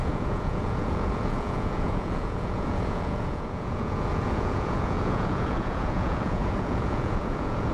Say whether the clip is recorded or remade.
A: remade